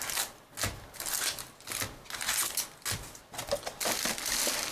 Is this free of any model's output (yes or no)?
yes